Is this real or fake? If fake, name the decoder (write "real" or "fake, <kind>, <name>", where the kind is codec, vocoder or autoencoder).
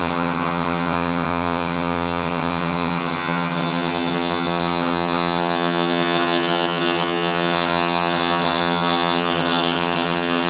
fake, vocoder, HiFi-GAN